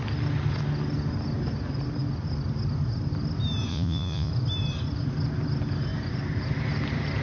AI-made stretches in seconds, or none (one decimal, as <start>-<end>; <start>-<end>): 3.7-4.3